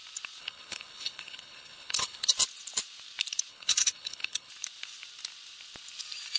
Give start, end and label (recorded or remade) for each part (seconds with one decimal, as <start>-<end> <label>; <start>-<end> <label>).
0.0-0.4 recorded; 0.4-2.3 remade; 2.3-3.5 recorded; 3.5-4.5 remade; 4.5-6.4 recorded